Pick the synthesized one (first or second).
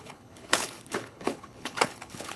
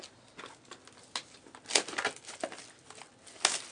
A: first